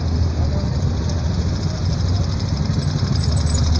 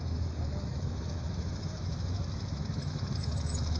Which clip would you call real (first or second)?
first